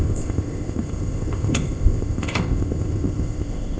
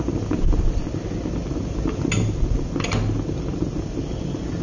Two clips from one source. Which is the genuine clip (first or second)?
second